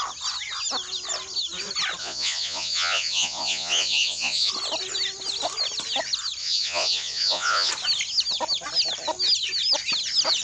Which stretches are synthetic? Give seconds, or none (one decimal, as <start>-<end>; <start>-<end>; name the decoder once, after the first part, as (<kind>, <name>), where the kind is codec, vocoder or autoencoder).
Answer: 2.0-4.5 (vocoder, Vocos); 6.4-7.7